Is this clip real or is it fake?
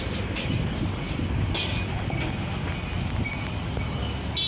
real